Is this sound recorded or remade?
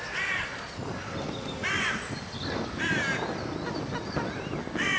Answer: recorded